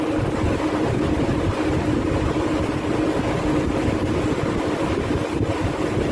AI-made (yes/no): no